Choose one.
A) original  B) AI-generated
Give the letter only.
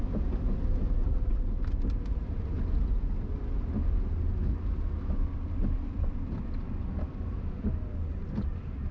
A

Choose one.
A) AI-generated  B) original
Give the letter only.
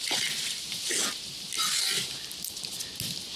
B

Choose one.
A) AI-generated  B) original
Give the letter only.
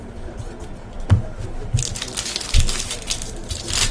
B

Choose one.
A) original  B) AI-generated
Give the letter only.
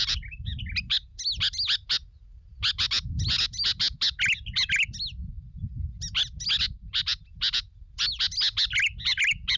A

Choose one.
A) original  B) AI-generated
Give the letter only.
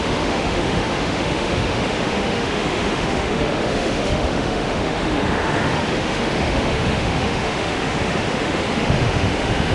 B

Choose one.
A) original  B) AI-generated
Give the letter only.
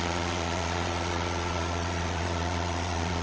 B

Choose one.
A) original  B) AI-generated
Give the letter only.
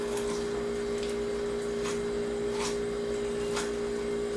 A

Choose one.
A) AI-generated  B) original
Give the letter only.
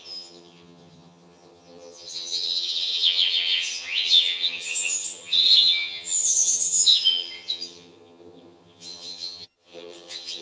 A